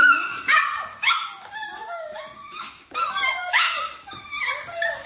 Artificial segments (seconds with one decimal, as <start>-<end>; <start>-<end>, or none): 0.0-5.1